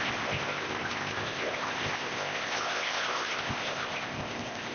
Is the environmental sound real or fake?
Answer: fake